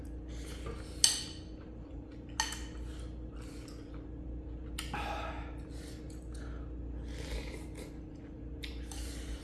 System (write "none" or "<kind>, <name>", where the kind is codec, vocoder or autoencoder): none